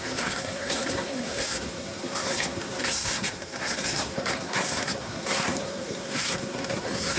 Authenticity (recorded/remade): remade